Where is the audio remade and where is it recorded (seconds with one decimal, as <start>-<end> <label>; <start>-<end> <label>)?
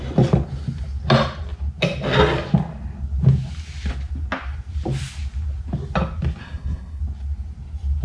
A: 0.0-6.4 recorded; 6.4-7.0 remade; 7.0-8.0 recorded